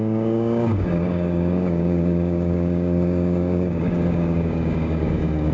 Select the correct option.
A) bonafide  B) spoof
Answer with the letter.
B